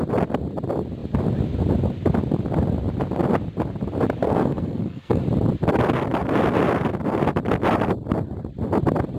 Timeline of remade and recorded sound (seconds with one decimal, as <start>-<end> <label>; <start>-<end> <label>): 0.0-4.2 recorded; 4.2-5.2 remade; 5.2-9.2 recorded